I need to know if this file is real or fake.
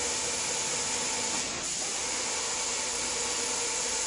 real